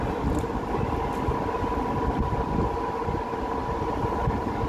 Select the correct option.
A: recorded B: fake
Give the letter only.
A